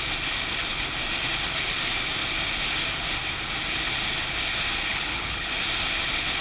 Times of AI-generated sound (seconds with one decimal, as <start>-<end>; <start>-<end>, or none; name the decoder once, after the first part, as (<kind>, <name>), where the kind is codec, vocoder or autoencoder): 4.9-5.5 (codec, HILCodec)